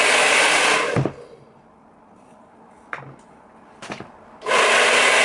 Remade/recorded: recorded